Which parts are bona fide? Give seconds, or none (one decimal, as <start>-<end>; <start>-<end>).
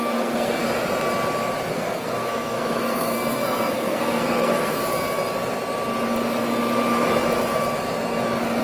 0.6-1.7; 4.8-8.6